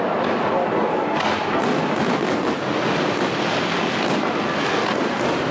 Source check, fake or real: real